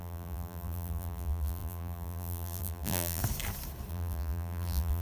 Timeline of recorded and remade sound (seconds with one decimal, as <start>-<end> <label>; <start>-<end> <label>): 0.0-3.2 remade; 3.2-3.9 recorded; 3.9-5.0 remade